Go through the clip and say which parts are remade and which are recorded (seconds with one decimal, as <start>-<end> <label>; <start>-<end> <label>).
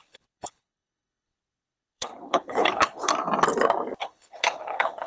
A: 0.0-3.1 remade; 3.1-4.0 recorded; 4.0-5.1 remade